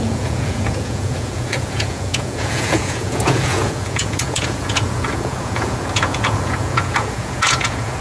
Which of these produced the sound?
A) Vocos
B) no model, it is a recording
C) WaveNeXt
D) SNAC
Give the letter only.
A